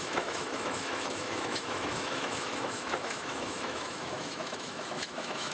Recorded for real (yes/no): no